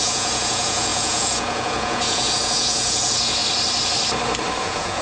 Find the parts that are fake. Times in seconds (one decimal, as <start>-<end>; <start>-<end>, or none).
0.0-3.4; 4.6-5.0